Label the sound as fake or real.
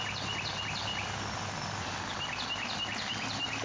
real